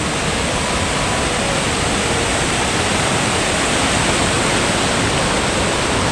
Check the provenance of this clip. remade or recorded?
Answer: recorded